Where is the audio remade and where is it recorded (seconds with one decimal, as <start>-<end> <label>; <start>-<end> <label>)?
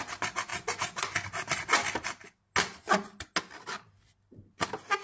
0.0-5.0 recorded